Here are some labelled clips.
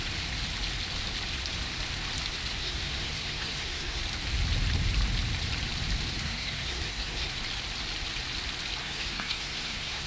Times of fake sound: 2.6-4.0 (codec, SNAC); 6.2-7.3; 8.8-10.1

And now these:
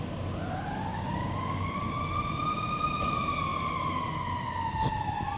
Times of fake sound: 0.9-2.0 (codec, DAC)

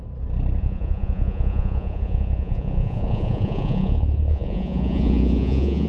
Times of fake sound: 0.6-5.9 (vocoder, Vocos)

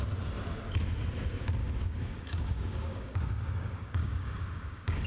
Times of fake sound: 1.6-5.1 (codec, DAC)